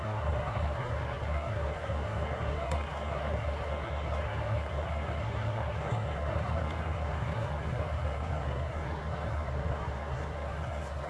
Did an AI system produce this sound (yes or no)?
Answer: yes